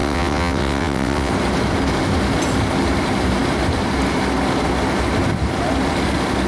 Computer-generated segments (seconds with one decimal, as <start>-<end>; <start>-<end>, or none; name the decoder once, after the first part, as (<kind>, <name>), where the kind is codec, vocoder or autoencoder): 0.0-1.3 (vocoder, WaveNeXt)